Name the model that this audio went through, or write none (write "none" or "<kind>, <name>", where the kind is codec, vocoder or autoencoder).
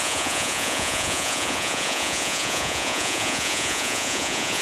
vocoder, Vocos